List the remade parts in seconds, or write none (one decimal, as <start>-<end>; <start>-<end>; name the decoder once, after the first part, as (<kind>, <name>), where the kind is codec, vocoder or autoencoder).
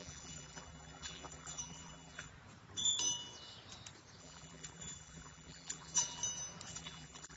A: 0.0-2.3 (vocoder, BigVGAN v2); 4.2-6.2; 6.7-7.4